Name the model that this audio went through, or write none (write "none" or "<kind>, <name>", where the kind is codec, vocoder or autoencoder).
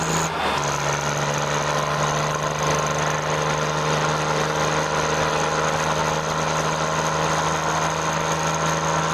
none